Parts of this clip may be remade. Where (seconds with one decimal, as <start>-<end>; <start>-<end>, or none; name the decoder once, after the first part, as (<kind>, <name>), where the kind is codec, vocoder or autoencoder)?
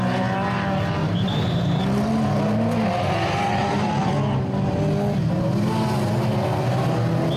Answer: 1.0-1.8 (vocoder, BigVGAN v2); 3.6-4.1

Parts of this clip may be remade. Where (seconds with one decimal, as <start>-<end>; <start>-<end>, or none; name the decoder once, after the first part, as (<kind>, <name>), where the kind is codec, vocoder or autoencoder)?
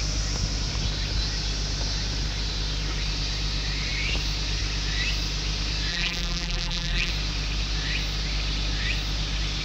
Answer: 5.9-7.1 (vocoder, BigVGAN v2)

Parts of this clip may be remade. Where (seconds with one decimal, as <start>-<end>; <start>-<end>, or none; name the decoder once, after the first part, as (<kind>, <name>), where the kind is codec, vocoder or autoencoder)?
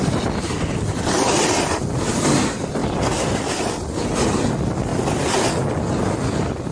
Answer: none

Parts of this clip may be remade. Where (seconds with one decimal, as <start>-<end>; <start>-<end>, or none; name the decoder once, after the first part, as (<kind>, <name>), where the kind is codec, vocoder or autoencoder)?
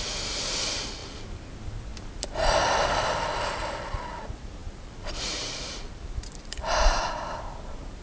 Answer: 1.0-1.5 (vocoder, BigVGAN v2); 4.6-8.0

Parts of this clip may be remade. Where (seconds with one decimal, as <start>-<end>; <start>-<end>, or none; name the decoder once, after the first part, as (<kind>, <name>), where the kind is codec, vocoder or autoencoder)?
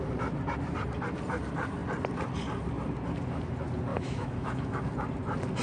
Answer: 3.9-4.8 (autoencoder, DAC-VAE)